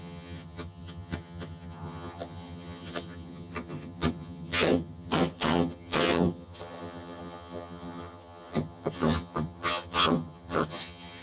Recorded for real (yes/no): no